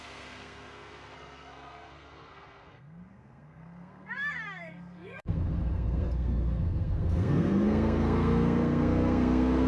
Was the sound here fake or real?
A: fake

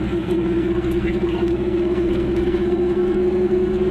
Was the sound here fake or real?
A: fake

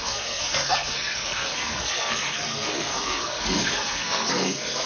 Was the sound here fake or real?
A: fake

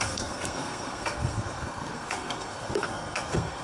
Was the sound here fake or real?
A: fake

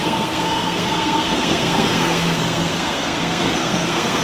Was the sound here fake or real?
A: fake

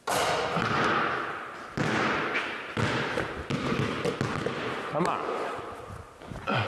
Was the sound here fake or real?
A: real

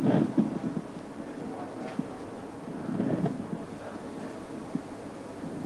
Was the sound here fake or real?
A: real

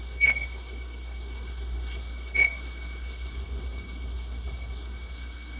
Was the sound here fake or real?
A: fake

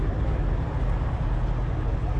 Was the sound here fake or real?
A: real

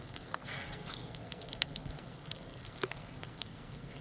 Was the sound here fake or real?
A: fake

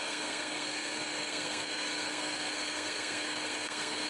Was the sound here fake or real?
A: fake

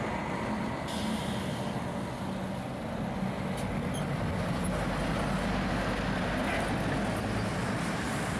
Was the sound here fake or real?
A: real